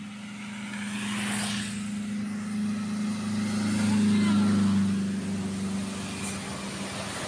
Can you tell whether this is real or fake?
real